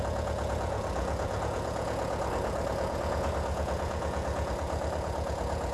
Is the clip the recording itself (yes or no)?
no